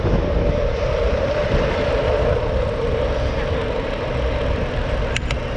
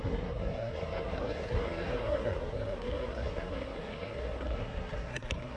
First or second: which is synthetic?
second